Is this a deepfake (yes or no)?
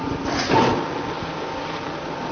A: no